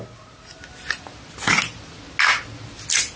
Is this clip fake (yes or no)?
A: no